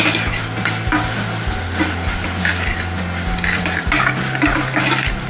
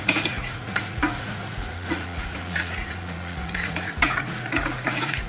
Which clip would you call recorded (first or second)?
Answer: first